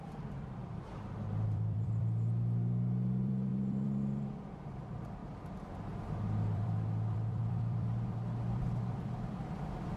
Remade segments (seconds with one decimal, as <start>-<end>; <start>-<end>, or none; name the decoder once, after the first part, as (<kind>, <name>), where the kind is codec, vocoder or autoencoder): 0.0-5.2 (vocoder, BigVGAN v2); 6.1-10.0